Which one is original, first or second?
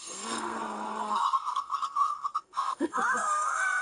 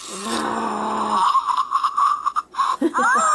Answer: second